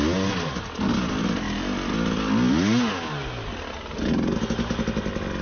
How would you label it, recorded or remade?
recorded